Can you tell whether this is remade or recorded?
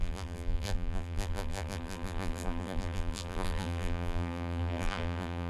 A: remade